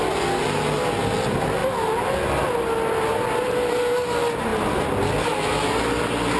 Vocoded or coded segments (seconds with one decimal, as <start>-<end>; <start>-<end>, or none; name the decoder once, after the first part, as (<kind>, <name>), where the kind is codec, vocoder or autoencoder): none